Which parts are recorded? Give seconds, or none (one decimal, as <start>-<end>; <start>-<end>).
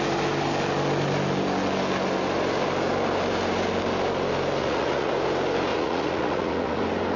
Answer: 0.0-4.6; 5.1-5.7; 6.8-7.2